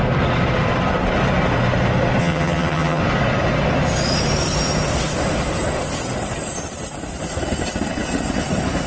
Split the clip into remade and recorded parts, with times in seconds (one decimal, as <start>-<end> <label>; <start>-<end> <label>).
0.0-2.2 recorded; 2.2-3.0 remade; 3.0-8.9 recorded